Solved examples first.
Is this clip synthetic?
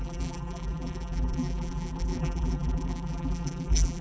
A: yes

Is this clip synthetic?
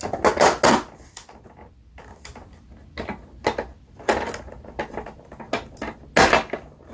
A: no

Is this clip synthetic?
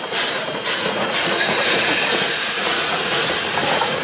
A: yes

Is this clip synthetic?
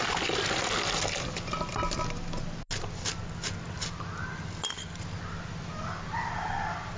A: no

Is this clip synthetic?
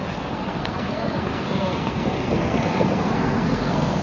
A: yes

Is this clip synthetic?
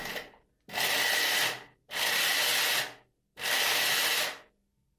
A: no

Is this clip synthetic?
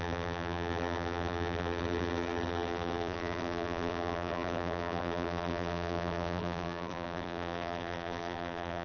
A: yes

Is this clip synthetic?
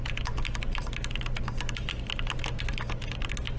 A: no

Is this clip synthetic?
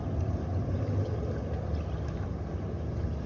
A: no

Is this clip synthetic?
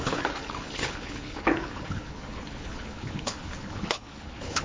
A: yes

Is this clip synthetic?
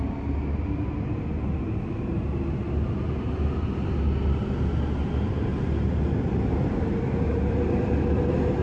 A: no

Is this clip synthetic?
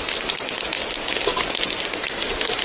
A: no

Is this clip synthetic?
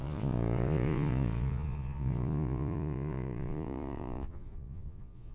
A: yes